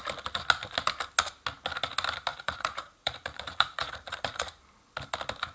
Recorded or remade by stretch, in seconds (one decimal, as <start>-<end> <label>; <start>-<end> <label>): 0.0-2.3 recorded; 2.3-4.6 remade; 4.6-5.5 recorded